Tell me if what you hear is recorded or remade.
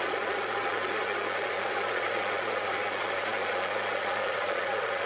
remade